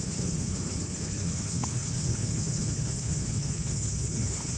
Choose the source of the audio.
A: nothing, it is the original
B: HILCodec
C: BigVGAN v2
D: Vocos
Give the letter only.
B